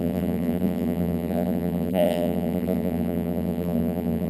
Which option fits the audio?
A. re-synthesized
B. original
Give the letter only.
A